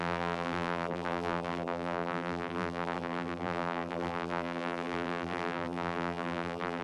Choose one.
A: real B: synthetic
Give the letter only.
B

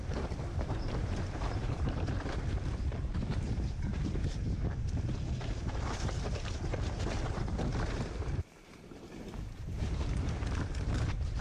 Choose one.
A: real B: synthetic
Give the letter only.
B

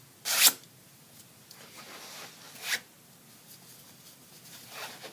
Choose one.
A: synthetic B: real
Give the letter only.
B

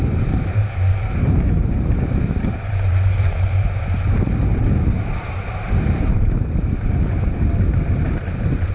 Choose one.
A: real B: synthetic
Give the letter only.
B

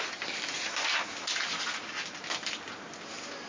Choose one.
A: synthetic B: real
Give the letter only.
B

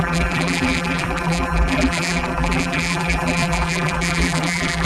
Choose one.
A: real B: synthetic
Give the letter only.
B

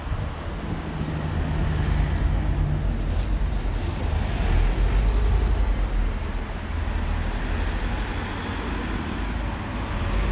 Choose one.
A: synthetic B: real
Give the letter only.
B